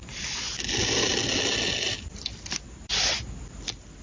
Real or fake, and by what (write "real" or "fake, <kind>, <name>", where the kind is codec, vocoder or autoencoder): real